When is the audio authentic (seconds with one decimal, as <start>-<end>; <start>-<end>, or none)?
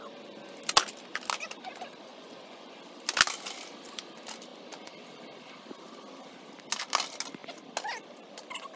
0.0-2.1; 2.8-8.8